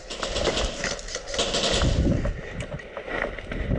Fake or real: real